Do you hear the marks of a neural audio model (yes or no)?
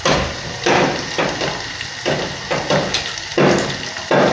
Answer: no